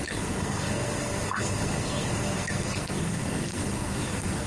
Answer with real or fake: fake